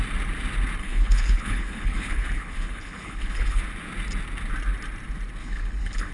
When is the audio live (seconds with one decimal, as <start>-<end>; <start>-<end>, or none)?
0.0-0.8; 3.6-5.4